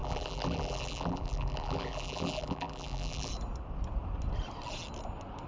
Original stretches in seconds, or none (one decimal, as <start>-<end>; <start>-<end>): 3.3-5.5

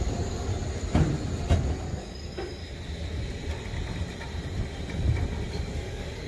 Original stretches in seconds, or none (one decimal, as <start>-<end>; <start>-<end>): 0.5-2.0; 2.6-5.5